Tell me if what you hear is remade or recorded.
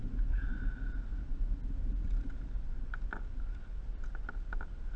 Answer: recorded